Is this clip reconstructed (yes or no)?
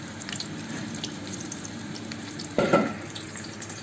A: yes